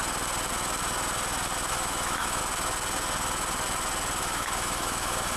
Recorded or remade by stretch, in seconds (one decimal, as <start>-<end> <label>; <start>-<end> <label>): 0.0-1.7 recorded; 1.7-2.4 remade; 2.4-4.2 recorded; 4.2-5.4 remade